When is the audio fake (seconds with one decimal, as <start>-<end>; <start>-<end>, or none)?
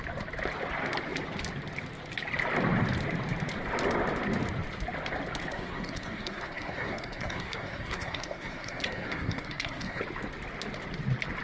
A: 5.5-10.0